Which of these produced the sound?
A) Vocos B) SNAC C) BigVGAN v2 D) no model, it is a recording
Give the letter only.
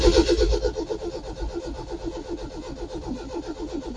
D